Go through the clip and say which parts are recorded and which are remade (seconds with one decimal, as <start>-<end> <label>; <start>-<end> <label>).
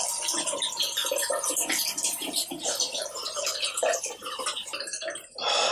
0.0-1.0 recorded; 1.0-4.4 remade; 4.4-5.7 recorded